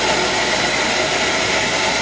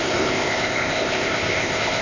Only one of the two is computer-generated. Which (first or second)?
second